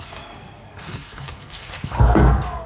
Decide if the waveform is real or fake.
fake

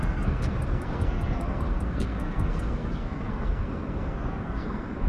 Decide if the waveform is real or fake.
fake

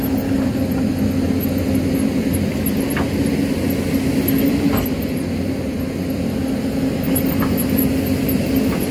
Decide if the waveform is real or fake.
real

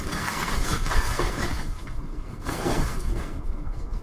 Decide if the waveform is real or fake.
fake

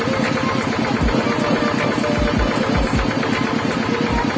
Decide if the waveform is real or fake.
real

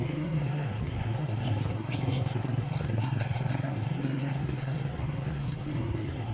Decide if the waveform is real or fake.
fake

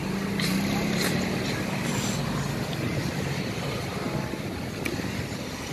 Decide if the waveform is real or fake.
real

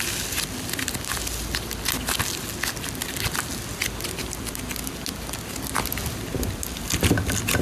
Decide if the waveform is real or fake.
real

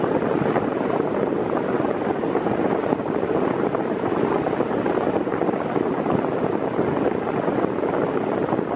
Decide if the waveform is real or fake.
real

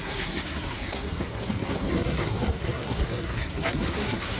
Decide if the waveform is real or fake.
fake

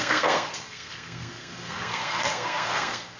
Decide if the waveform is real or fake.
fake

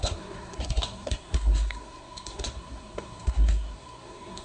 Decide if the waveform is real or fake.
fake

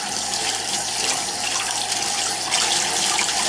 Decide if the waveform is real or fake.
real